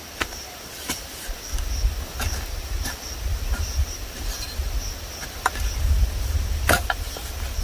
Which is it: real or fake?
real